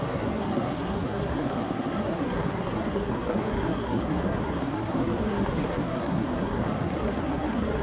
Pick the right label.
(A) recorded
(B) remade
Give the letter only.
B